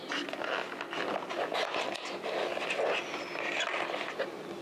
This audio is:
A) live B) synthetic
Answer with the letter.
A